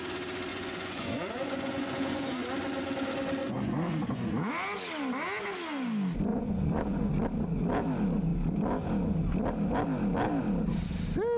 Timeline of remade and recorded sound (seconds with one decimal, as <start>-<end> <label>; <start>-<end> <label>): 0.0-0.5 recorded; 0.5-2.2 remade; 2.2-3.4 recorded; 3.4-4.5 remade; 4.5-6.3 recorded; 6.3-7.1 remade; 7.1-11.4 recorded